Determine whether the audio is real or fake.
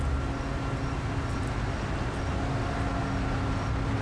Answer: real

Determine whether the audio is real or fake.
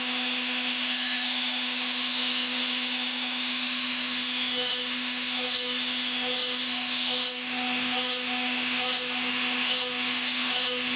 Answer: fake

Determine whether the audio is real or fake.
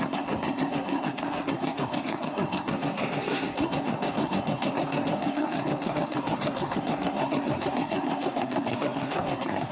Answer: fake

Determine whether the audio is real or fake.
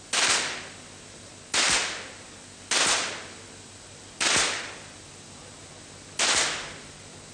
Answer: real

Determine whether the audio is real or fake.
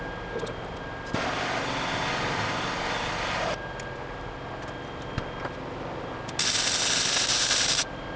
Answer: real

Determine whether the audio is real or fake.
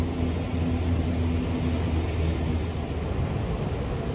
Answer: real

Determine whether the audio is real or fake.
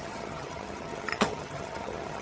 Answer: fake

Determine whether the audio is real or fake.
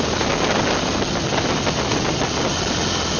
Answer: real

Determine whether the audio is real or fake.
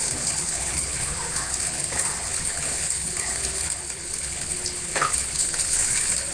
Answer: fake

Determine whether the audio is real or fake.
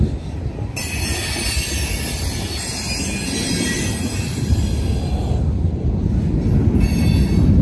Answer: real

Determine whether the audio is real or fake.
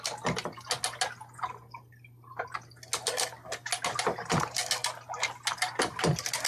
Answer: real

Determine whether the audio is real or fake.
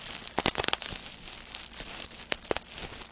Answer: real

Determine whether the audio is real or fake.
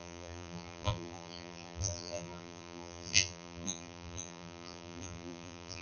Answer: fake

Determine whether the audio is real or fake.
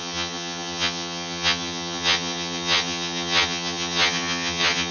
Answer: fake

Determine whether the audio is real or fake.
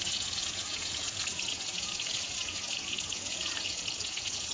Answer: fake